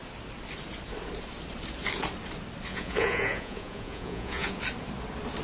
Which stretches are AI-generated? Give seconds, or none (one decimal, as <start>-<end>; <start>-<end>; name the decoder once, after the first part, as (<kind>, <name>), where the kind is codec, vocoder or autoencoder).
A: 2.7-4.6 (vocoder, Vocos)